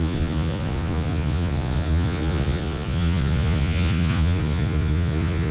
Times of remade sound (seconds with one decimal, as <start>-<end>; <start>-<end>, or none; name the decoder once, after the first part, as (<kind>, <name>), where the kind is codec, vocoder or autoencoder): 0.0-5.5 (vocoder, Vocos)